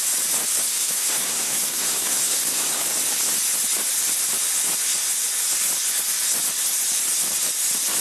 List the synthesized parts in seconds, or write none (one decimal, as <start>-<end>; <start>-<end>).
0.5-2.8